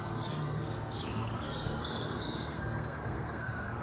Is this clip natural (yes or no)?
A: no